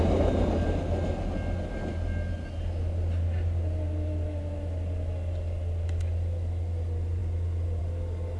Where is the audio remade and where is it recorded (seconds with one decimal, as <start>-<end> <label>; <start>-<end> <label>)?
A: 0.0-8.4 recorded